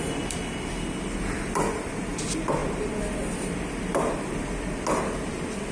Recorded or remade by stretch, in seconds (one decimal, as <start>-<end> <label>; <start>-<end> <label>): 0.0-5.7 recorded